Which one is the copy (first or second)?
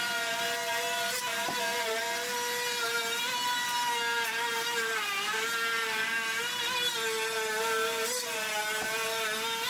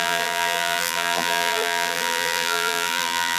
second